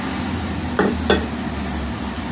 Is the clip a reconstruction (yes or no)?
no